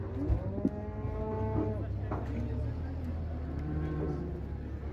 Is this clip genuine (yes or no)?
yes